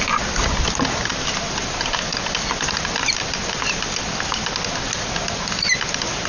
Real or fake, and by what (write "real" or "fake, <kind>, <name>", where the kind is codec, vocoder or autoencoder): real